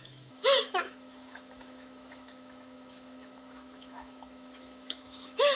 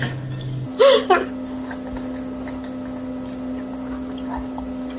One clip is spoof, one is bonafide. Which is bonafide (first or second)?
second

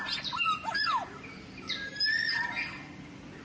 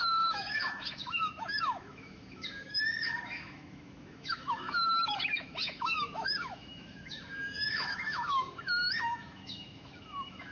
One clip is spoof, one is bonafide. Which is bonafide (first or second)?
first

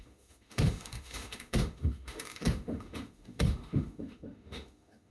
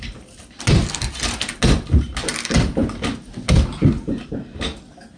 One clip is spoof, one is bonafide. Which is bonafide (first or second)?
second